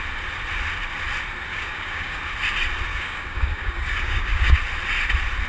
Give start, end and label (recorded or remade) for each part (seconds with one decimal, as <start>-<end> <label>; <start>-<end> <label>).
0.0-1.5 recorded; 1.5-2.2 remade; 2.2-2.9 recorded; 2.9-4.6 remade; 4.6-5.5 recorded